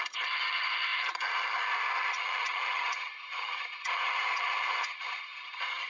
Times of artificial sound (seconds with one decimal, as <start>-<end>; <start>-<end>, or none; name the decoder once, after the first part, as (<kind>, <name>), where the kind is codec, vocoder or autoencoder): 0.0-5.9 (vocoder, HiFi-GAN)